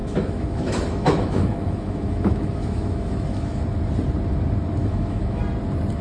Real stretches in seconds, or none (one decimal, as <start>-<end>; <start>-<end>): 3.6-4.8; 5.4-6.0